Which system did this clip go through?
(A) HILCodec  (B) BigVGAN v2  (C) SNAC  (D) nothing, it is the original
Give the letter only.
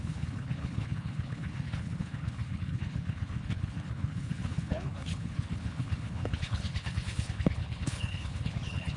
A